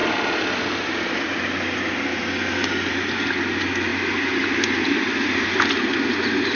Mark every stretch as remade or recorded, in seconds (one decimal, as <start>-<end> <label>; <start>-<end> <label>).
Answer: 0.0-0.6 remade; 0.6-6.6 recorded